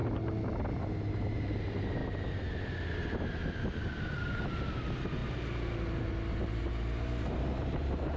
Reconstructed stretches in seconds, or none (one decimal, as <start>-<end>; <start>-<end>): 1.1-2.0; 2.9-3.4; 4.7-5.2; 6.3-8.2